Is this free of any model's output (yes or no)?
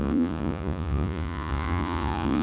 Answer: no